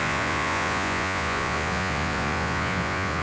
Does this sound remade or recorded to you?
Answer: remade